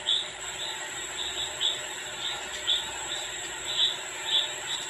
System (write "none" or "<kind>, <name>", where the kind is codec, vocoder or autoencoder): none